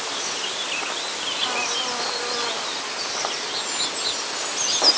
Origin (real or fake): real